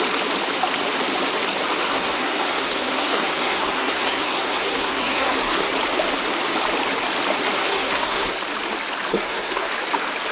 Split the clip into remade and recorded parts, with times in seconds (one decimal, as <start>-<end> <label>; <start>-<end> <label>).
0.0-1.9 recorded; 1.9-5.7 remade; 5.7-7.6 recorded; 7.6-8.4 remade; 8.4-9.1 recorded; 9.1-9.7 remade; 9.7-10.3 recorded